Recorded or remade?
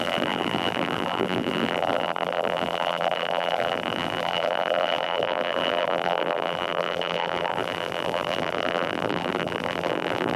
remade